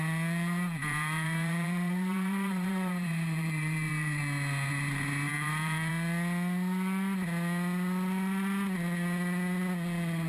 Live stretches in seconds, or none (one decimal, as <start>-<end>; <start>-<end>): 0.0-0.8; 4.2-5.3; 5.9-10.3